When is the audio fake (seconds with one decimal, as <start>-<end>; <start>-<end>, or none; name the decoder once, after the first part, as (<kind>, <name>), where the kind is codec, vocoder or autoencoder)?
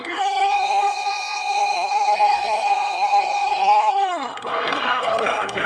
0.0-5.7 (codec, SNAC)